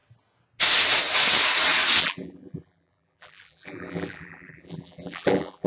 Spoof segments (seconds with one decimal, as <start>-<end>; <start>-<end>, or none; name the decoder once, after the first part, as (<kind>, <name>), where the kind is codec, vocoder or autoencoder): 2.0-5.7 (vocoder, BigVGAN v2)